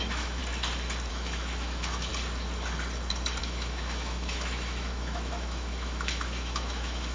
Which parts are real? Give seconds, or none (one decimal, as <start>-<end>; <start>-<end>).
0.4-1.1; 2.1-3.4